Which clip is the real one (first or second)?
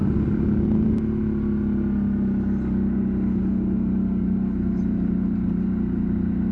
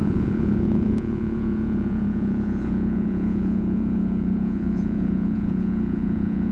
first